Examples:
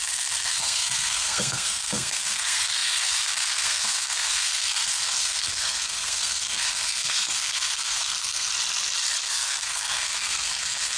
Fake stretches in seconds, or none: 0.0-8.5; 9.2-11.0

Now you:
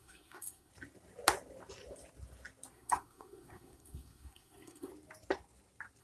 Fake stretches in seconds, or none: 0.0-0.7; 2.7-4.9

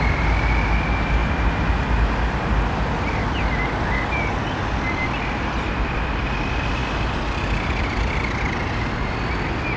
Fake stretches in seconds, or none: none

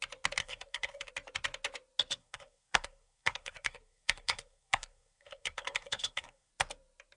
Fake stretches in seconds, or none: 0.4-1.1; 2.2-6.5

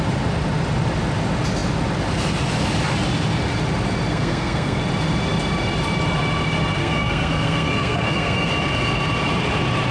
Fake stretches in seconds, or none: 4.1-4.8; 6.8-8.5

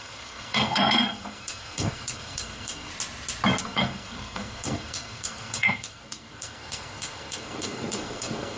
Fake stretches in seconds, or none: 0.0-2.9; 3.6-8.6

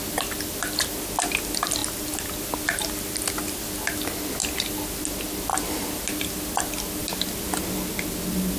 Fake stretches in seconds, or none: none

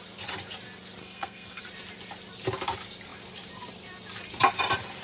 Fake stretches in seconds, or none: 1.0-1.6